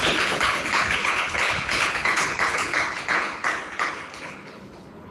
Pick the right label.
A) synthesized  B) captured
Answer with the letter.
A